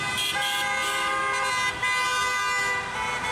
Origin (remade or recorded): recorded